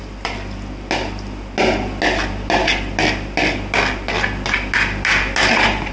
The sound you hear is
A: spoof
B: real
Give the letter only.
B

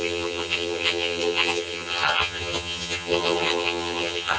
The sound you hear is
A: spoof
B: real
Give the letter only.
A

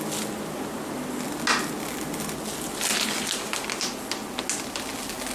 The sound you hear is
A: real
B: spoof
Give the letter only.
A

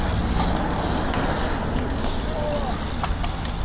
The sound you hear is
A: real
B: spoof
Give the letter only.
A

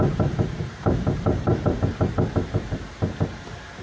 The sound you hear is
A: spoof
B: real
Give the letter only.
A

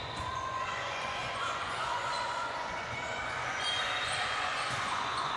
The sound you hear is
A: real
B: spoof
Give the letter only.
B